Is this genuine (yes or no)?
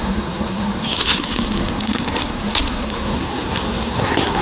no